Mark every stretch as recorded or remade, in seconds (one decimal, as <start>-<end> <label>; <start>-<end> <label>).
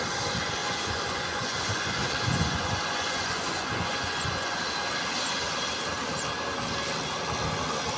0.0-0.6 recorded; 0.6-4.6 remade; 4.6-8.0 recorded